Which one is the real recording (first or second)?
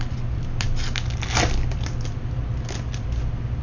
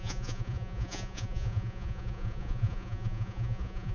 first